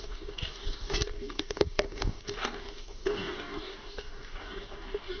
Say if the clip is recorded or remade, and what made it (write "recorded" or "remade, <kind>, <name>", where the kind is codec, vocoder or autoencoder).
remade, codec, DAC